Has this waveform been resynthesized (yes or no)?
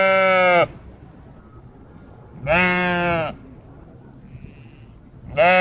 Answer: no